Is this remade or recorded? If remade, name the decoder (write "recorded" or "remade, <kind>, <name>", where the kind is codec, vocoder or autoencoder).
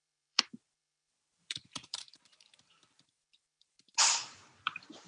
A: remade, vocoder, BigVGAN v2